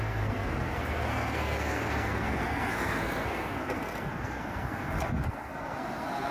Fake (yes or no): yes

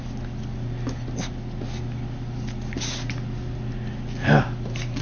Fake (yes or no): no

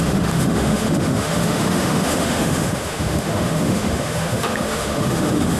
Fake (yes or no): yes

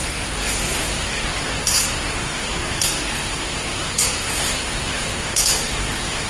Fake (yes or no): yes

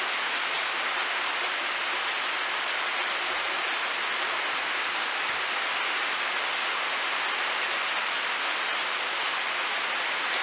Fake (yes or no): no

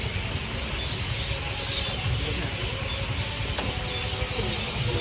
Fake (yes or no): no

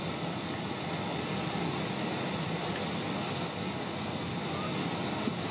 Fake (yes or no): no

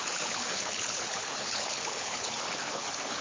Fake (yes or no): yes